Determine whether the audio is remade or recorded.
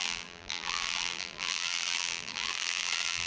remade